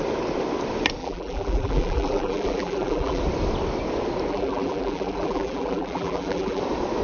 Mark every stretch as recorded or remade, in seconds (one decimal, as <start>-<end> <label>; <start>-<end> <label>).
0.0-1.0 recorded; 1.0-3.2 remade; 3.2-4.3 recorded; 4.3-6.6 remade; 6.6-7.0 recorded